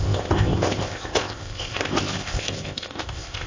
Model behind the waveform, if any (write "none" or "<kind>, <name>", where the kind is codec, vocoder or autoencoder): codec, ZipCodec